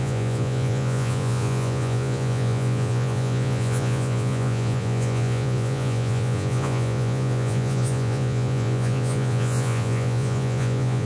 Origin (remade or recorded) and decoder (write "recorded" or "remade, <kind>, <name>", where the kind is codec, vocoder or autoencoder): remade, vocoder, Vocos